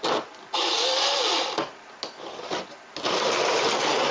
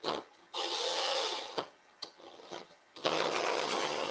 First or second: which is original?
first